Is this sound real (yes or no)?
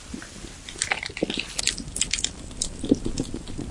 yes